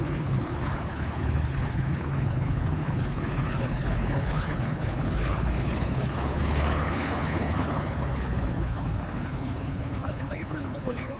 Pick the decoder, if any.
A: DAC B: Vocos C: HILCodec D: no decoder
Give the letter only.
C